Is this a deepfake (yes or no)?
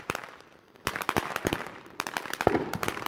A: yes